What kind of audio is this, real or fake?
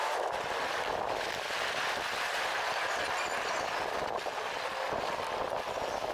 real